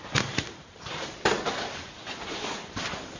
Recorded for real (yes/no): no